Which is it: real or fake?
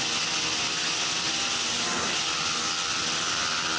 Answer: real